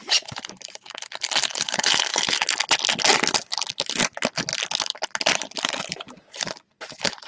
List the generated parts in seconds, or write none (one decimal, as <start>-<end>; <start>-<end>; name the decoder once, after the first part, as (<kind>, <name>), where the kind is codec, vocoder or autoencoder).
none